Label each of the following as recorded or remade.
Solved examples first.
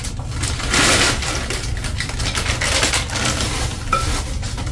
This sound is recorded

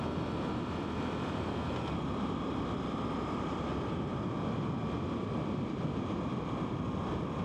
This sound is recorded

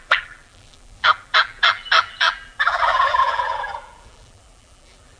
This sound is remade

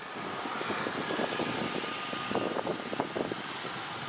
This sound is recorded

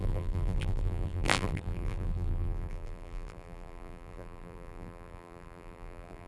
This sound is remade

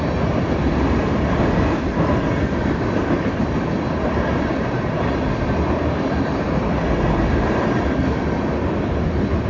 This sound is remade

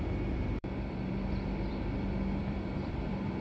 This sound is remade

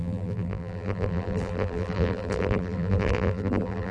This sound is remade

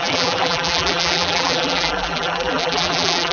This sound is remade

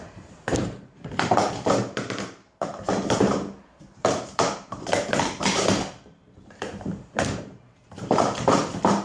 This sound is remade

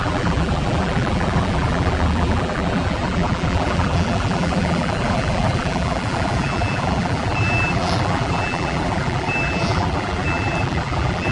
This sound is remade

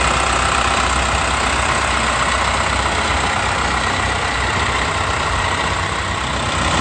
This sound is recorded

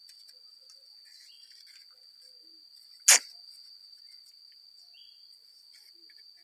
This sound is recorded